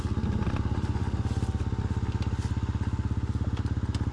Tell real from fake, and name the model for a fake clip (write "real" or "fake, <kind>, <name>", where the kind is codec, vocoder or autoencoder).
real